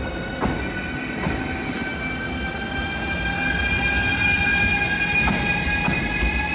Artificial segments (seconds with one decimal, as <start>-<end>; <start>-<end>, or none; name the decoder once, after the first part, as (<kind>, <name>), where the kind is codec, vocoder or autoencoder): none

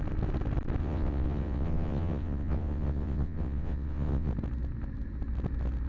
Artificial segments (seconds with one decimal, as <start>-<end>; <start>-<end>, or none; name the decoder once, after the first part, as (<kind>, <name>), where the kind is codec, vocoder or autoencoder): 0.8-4.3 (vocoder, WaveNeXt)

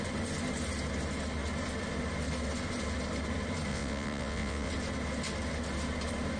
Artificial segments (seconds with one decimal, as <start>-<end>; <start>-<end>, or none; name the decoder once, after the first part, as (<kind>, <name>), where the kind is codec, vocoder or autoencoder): 3.7-4.7 (vocoder, WaveNeXt)

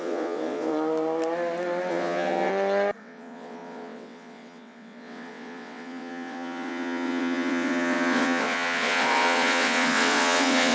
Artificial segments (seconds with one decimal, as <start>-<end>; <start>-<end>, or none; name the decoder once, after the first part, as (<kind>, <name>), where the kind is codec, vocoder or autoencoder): 0.0-0.7 (vocoder, WaveNeXt); 1.9-2.5; 3.0-10.7